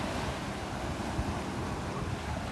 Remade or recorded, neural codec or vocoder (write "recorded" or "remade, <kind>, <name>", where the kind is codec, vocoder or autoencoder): recorded